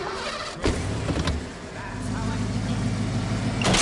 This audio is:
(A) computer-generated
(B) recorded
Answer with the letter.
B